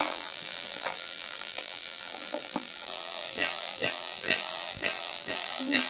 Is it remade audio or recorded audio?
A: remade